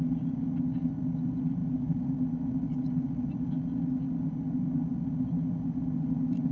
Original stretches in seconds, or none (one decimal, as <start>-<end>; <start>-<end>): 0.0-6.5